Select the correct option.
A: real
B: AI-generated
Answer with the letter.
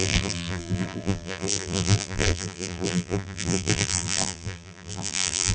B